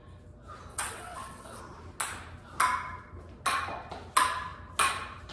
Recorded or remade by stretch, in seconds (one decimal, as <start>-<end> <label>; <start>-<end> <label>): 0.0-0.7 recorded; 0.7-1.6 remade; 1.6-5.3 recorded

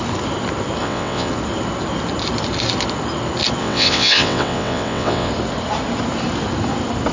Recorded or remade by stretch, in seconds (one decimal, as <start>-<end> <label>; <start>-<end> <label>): 0.0-0.8 recorded; 0.8-1.3 remade; 1.3-3.6 recorded; 3.6-5.3 remade; 5.3-7.1 recorded

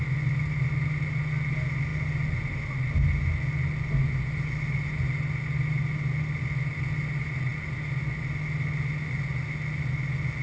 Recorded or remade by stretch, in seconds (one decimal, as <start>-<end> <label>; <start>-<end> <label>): 0.0-10.4 recorded

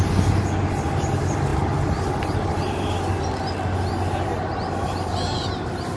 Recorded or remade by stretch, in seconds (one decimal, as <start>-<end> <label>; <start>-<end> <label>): 0.0-6.0 recorded

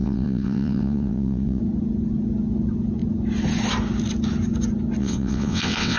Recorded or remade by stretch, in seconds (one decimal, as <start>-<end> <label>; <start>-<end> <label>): 0.0-1.6 remade; 1.6-5.0 recorded; 5.0-6.0 remade

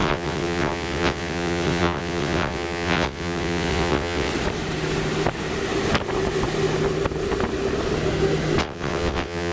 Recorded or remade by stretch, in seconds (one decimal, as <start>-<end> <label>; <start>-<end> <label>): 0.0-4.3 remade; 4.3-8.6 recorded; 8.6-9.5 remade